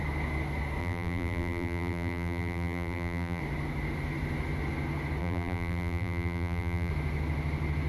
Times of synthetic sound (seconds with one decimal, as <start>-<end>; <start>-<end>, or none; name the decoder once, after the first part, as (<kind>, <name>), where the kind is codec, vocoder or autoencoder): 0.8-3.4 (vocoder, BigVGAN v2); 5.2-6.9